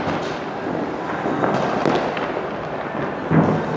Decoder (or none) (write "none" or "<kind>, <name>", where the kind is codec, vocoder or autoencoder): none